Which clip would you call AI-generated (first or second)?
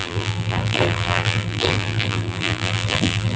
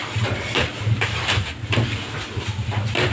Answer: first